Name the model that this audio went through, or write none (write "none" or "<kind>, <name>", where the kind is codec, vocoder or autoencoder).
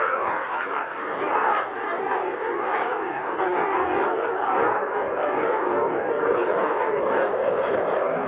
codec, DAC